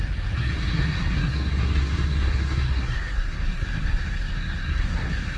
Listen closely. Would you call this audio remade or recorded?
remade